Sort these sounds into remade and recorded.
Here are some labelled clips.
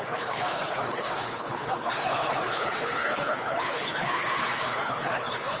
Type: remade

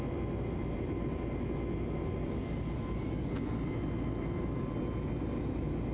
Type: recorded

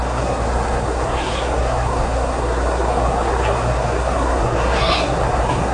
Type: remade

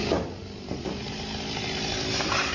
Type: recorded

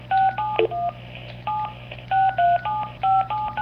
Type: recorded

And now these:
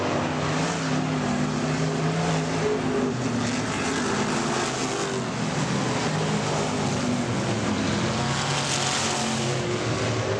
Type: recorded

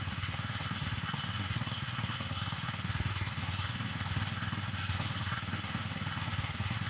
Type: remade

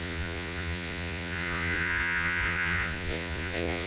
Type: remade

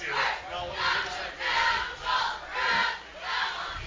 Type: recorded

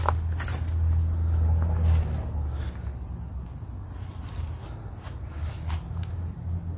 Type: recorded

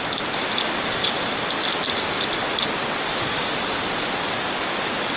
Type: recorded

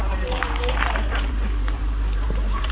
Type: remade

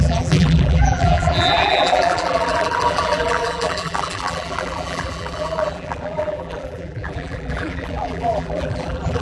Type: remade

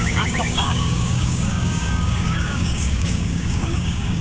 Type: remade